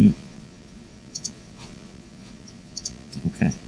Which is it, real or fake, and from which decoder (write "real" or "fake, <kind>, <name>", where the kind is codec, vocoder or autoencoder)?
fake, vocoder, Vocos